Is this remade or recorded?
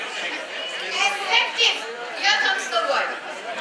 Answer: remade